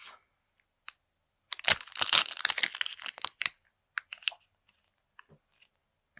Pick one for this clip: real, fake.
real